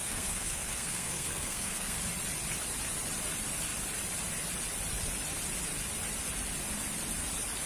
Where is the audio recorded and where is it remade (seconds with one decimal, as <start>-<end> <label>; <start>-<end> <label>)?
0.0-2.0 remade; 2.0-7.7 recorded